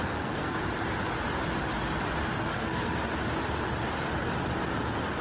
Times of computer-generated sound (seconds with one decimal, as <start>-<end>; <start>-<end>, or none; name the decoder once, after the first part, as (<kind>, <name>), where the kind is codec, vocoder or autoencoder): 0.0-0.6 (codec, SNAC); 2.5-3.0